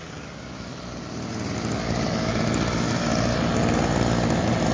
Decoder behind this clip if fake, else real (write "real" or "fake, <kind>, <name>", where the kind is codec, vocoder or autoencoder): real